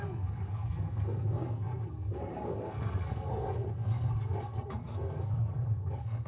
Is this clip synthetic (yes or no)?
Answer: yes